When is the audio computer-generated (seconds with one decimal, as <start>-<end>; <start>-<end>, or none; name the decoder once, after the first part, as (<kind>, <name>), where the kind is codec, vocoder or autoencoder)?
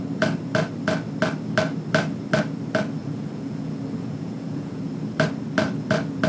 3.0-4.8 (vocoder, Vocos)